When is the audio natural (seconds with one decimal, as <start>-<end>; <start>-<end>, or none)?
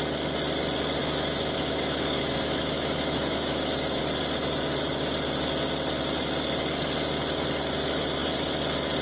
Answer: 0.0-1.0; 4.0-9.0